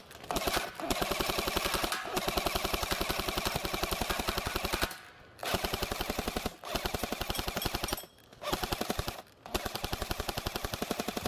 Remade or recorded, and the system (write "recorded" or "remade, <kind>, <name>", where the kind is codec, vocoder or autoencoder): recorded